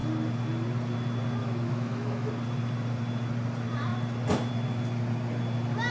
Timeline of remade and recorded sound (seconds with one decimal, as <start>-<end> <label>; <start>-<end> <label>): 0.0-1.4 recorded; 1.4-2.3 remade; 2.3-5.9 recorded